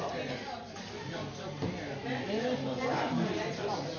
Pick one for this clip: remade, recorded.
recorded